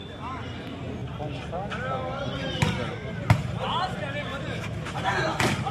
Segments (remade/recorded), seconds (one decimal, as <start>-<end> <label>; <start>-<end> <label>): 0.0-4.3 recorded; 4.3-5.1 remade; 5.1-5.7 recorded

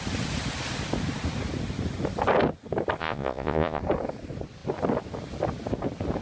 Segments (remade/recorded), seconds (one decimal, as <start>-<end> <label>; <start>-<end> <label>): 0.0-3.0 recorded; 3.0-3.8 remade; 3.8-6.2 recorded

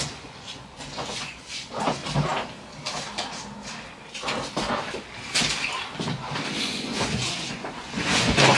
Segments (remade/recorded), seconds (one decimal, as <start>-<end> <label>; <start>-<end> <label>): 0.0-2.0 remade; 2.0-6.6 recorded; 6.6-8.6 remade

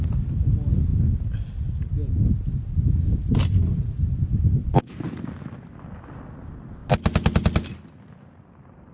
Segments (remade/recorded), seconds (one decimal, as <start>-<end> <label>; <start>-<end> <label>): 0.0-8.9 recorded

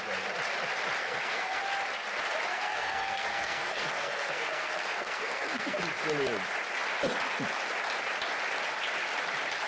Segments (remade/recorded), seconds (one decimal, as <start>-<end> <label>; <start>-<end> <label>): 0.0-1.0 recorded; 1.0-1.6 remade; 1.6-2.5 recorded; 2.5-5.8 remade; 5.8-9.7 recorded